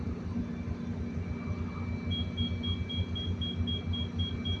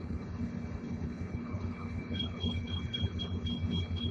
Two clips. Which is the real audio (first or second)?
first